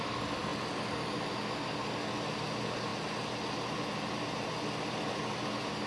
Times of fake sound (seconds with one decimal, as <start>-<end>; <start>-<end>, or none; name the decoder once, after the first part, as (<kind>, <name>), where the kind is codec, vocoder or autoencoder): none